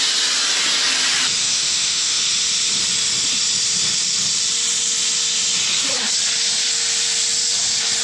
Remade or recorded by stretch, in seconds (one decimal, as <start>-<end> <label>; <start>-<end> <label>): 0.0-1.4 recorded; 1.4-2.2 remade; 2.2-8.0 recorded